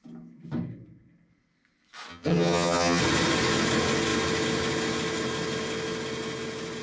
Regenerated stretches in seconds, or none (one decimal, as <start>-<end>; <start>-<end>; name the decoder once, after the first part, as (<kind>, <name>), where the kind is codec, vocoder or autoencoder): 2.1-3.0 (vocoder, HiFi-GAN)